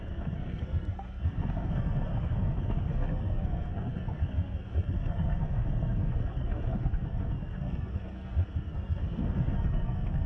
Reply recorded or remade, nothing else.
remade